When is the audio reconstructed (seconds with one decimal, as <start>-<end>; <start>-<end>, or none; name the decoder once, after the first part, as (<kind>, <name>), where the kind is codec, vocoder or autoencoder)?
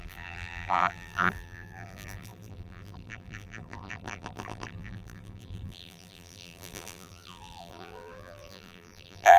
0.0-9.4 (vocoder, BigVGAN v2)